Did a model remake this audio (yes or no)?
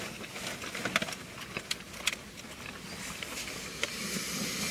no